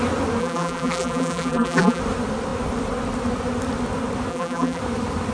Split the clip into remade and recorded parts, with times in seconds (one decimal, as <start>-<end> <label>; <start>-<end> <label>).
0.0-0.4 recorded; 0.4-2.0 remade; 2.0-4.3 recorded; 4.3-4.8 remade; 4.8-5.3 recorded